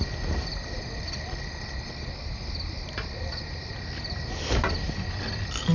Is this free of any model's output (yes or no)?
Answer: yes